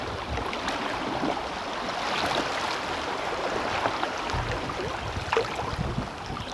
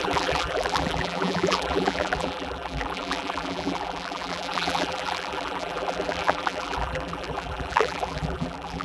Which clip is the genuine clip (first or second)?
first